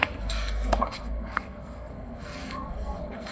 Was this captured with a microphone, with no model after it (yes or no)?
no